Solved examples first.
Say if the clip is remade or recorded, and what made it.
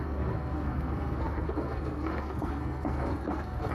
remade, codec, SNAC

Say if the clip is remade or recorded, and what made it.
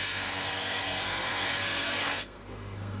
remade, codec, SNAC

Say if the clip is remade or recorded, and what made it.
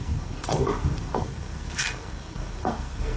remade, codec, SNAC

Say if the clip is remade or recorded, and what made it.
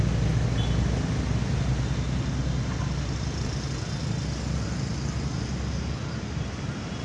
recorded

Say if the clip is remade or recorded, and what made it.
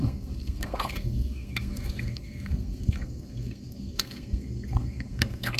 remade, codec, SNAC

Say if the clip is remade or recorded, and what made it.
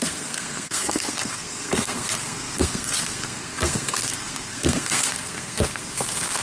remade, codec, SNAC